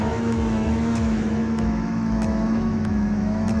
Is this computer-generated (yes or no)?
yes